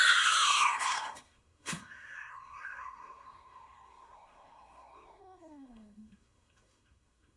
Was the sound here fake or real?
fake